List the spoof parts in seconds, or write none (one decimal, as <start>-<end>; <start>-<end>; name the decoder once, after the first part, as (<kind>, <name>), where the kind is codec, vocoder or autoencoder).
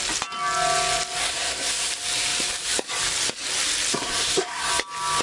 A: 1.2-1.9 (codec, SNAC); 3.9-4.7